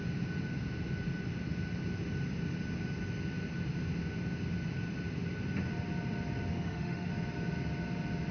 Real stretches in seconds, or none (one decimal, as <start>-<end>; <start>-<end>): 0.0-6.5; 7.1-8.3

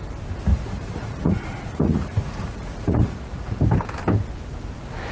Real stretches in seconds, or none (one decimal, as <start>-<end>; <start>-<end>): 0.0-0.5; 3.6-5.1